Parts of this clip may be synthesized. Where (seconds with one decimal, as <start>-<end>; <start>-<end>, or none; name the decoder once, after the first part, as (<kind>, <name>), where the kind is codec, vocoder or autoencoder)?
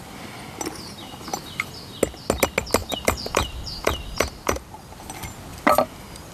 2.8-5.0 (vocoder, BigVGAN v2); 5.5-6.3